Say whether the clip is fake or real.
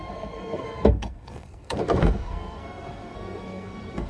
fake